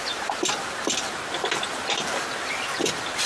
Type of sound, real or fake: real